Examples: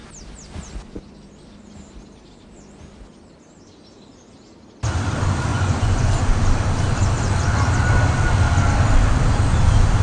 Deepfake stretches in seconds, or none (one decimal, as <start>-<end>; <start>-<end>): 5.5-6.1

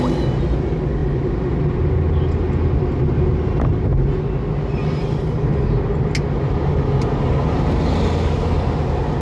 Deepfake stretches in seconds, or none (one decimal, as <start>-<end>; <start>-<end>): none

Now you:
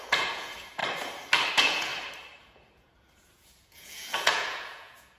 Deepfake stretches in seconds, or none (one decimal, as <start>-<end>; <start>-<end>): 0.0-0.8; 1.5-1.9; 2.4-5.2

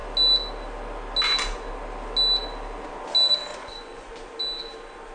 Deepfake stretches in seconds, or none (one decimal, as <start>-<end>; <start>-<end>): 3.5-4.1

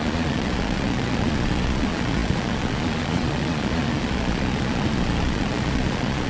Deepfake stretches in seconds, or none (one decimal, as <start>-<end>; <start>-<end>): 0.0-6.3

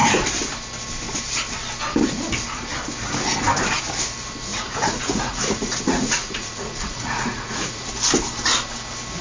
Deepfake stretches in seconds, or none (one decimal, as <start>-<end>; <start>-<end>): 4.5-7.9

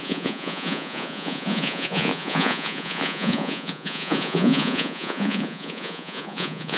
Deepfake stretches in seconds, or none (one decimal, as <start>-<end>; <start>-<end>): 0.0-6.8

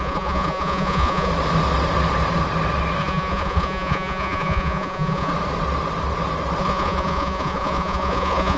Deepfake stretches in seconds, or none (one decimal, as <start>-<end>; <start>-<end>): 0.0-1.3; 3.0-5.3; 6.6-8.6